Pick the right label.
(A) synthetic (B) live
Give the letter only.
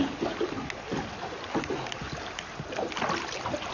B